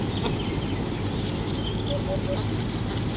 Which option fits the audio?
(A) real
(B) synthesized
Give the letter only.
A